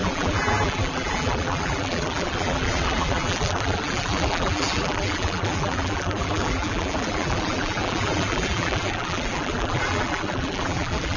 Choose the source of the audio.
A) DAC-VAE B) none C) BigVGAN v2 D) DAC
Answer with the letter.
C